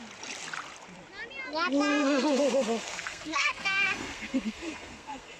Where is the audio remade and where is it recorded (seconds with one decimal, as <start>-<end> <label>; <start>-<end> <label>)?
0.0-1.9 recorded; 1.9-5.4 remade